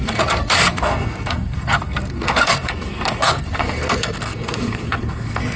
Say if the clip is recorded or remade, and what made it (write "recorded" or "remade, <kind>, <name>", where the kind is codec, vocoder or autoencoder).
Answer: remade, codec, SNAC